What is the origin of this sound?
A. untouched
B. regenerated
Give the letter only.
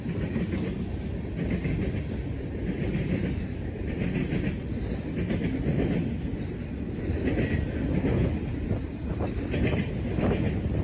A